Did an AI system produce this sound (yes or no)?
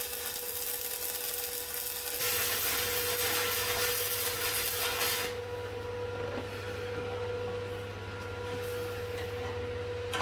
no